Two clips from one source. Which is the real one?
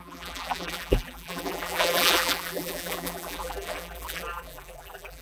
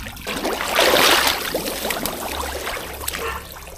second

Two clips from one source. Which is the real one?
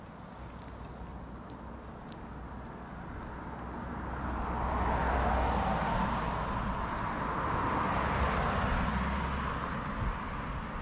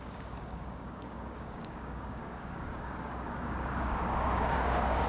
first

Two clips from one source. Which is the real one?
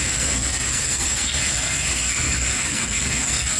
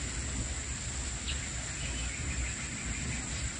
second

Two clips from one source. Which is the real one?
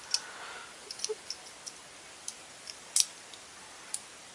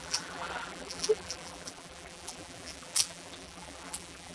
first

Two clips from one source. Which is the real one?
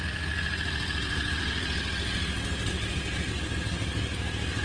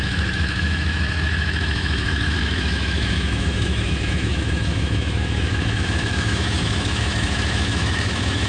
first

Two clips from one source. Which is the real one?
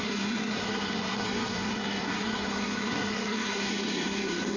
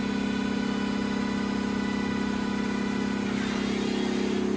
second